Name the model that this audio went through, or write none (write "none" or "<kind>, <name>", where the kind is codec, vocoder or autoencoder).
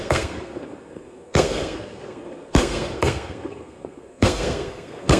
codec, SNAC